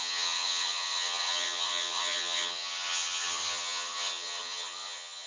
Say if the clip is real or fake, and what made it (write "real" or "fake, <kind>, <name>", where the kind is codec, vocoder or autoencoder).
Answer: fake, vocoder, HiFi-GAN